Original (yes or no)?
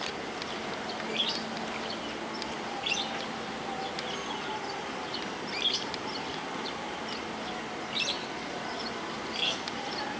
yes